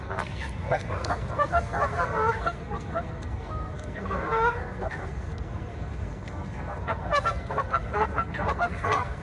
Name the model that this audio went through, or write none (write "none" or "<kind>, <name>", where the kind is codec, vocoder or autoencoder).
codec, SNAC